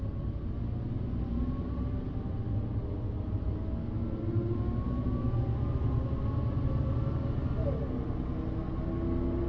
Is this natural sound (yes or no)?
yes